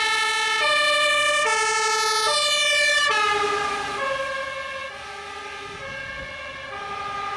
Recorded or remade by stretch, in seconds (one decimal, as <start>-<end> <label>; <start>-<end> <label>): 0.0-7.4 recorded